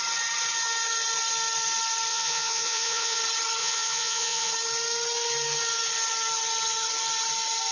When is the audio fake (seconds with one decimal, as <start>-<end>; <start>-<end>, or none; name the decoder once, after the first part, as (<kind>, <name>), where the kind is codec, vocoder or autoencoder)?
2.1-3.2 (vocoder, Vocos); 3.6-4.5